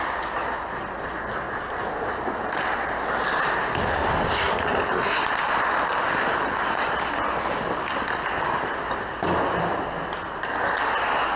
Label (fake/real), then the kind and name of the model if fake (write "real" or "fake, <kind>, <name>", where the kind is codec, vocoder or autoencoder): real